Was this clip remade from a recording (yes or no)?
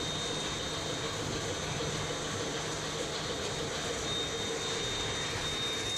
no